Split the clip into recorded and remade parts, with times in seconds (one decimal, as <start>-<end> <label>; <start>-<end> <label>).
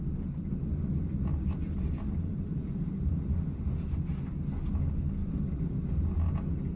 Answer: 0.0-2.3 recorded; 2.3-3.1 remade; 3.1-5.2 recorded; 5.2-5.9 remade; 5.9-6.8 recorded